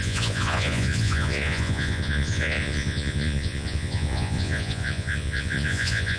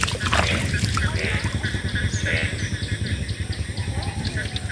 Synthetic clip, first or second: first